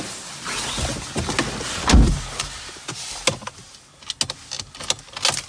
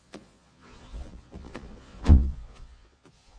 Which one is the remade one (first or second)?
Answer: second